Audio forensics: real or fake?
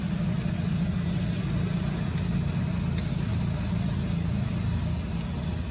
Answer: real